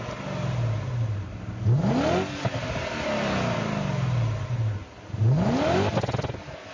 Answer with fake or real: real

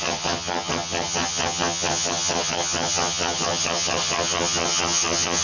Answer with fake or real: fake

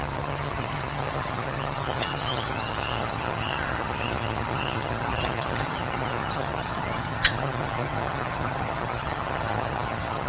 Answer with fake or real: fake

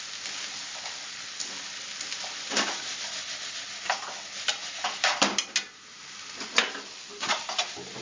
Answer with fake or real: real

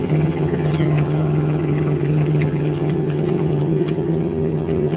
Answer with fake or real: fake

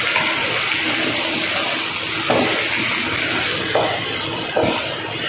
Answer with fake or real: real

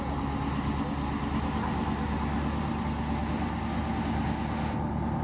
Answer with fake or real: real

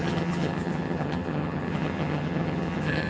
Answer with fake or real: fake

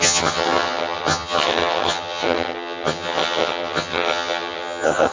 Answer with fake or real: fake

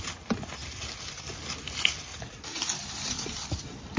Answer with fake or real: real